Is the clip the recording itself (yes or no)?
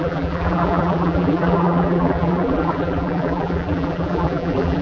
no